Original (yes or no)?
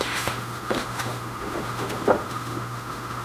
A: no